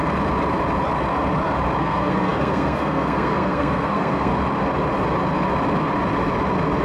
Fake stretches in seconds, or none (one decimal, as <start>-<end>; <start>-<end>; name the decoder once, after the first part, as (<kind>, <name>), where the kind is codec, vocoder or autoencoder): 1.8-4.3 (codec, SNAC)